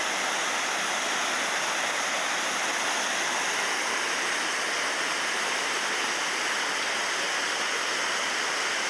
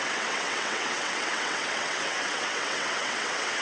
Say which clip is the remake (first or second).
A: second